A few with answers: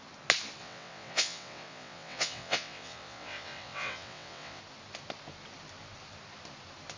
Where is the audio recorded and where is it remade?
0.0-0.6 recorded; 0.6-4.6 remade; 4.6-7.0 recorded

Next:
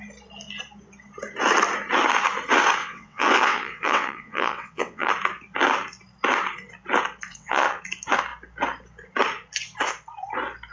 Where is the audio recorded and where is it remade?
0.0-2.8 recorded; 2.8-5.1 remade; 5.1-7.3 recorded; 7.3-7.8 remade; 7.8-10.7 recorded

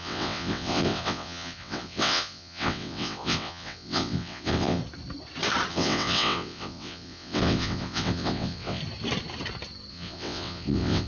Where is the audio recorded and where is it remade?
0.0-4.8 remade; 4.8-5.7 recorded; 5.7-8.8 remade; 8.8-9.9 recorded; 9.9-11.1 remade

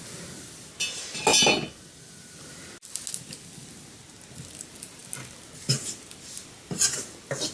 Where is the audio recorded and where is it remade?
0.0-7.5 recorded

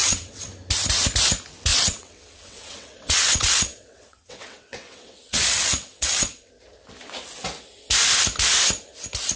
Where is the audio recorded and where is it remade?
0.0-0.5 remade; 0.5-1.7 recorded; 1.7-6.5 remade; 6.5-9.4 recorded

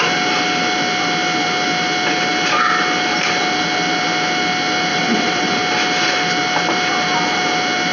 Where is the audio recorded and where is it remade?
0.0-4.9 recorded; 4.9-5.5 remade; 5.5-7.9 recorded